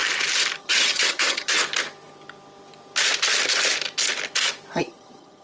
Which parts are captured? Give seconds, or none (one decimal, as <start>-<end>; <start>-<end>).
0.0-0.6; 1.6-4.8